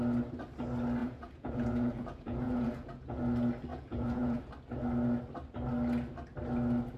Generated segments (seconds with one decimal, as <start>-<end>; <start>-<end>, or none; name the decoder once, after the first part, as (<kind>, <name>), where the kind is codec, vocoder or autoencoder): 1.0-3.2 (vocoder, Vocos); 3.7-4.4